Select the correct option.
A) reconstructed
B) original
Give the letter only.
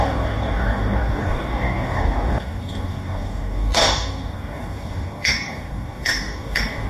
A